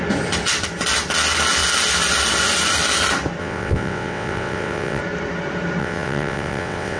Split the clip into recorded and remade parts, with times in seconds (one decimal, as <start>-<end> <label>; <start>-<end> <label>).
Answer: 0.0-3.4 recorded; 3.4-5.0 remade; 5.0-5.8 recorded; 5.8-7.0 remade